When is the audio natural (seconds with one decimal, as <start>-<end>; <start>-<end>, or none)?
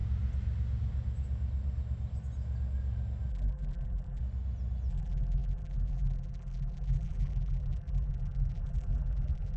0.0-3.3; 4.2-4.9